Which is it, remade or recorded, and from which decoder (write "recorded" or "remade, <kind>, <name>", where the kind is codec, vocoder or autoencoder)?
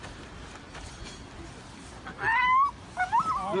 recorded